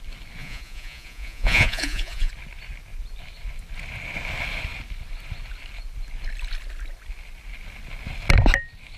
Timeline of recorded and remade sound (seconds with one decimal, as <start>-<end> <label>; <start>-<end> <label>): 0.0-0.4 recorded; 0.4-2.3 remade; 2.3-9.0 recorded